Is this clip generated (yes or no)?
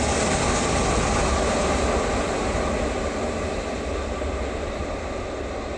no